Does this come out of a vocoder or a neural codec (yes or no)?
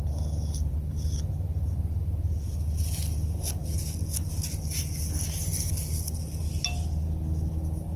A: no